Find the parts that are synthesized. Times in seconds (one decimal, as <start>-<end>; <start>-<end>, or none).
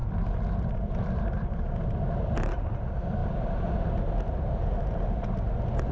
none